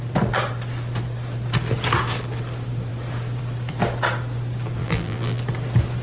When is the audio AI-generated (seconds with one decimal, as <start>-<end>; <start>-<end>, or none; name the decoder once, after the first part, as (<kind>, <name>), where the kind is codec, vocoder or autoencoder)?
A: 4.8-5.4 (vocoder, BigVGAN v2)